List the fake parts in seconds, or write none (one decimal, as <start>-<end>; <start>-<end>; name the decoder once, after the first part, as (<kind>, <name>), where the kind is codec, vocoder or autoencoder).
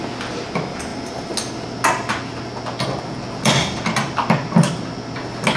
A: none